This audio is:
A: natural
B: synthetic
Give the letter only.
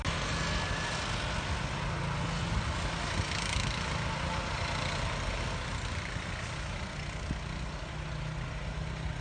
A